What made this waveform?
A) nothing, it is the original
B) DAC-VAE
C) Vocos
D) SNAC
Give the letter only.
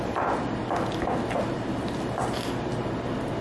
A